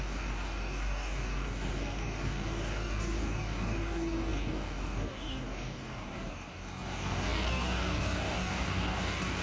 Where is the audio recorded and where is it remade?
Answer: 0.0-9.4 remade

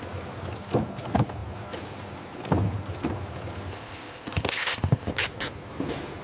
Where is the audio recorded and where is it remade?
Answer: 0.0-3.7 recorded; 3.7-5.1 remade; 5.1-6.2 recorded

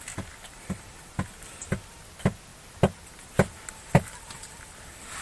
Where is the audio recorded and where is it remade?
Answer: 0.0-5.2 recorded

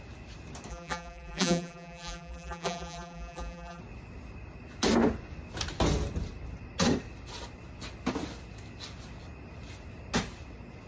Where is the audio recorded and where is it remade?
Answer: 0.0-0.7 recorded; 0.7-3.8 remade; 3.8-10.9 recorded

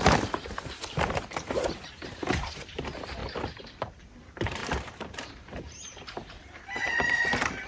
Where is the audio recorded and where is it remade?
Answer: 0.0-3.2 remade; 3.2-4.0 recorded; 4.0-7.7 remade

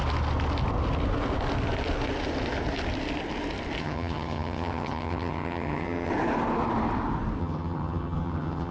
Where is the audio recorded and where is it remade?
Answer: 0.0-3.8 recorded; 3.8-6.1 remade; 6.1-7.4 recorded; 7.4-8.7 remade